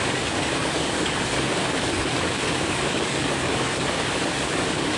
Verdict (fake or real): fake